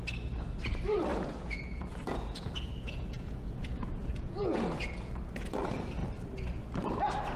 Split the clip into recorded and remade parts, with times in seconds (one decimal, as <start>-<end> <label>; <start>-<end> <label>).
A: 0.0-1.1 recorded; 1.1-5.1 remade; 5.1-7.4 recorded